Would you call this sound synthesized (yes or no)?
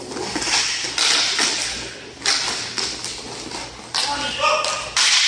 no